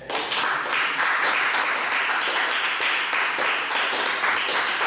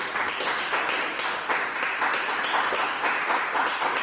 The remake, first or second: second